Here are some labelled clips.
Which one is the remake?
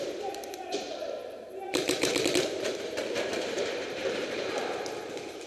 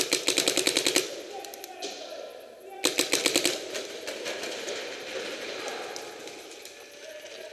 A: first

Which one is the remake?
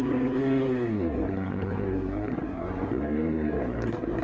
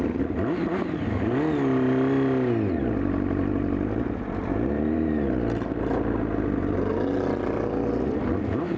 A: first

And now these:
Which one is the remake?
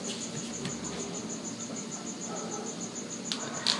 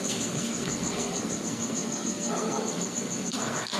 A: second